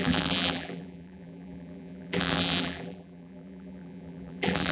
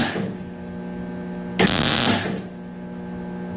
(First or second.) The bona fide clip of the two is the second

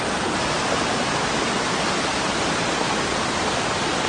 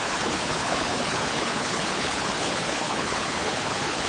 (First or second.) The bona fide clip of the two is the first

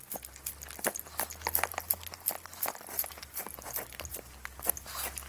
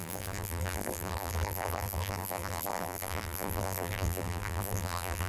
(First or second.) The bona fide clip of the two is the first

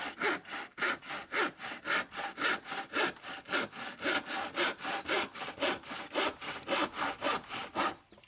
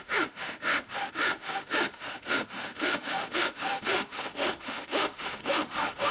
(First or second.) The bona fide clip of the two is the first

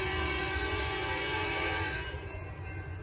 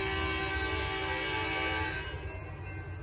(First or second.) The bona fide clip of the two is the second